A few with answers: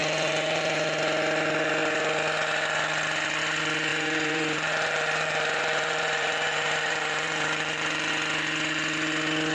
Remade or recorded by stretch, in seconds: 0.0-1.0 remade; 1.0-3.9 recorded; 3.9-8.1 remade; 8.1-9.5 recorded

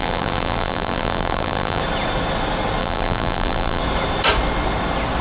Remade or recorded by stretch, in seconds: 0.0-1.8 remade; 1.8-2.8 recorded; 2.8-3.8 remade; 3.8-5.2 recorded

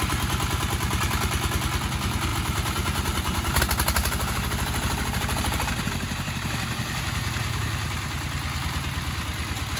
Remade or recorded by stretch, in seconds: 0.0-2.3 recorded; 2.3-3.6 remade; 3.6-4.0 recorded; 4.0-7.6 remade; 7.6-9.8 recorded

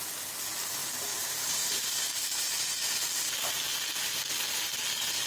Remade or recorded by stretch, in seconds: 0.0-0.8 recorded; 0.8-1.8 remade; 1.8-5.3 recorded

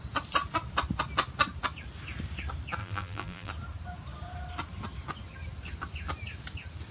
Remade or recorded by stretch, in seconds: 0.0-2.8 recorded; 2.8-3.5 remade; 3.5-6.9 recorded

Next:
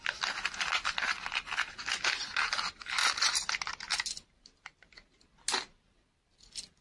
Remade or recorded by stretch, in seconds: 0.0-3.0 recorded; 3.0-3.5 remade; 3.5-6.8 recorded

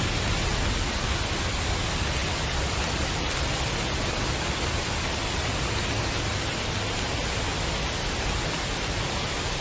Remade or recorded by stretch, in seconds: 0.0-9.6 recorded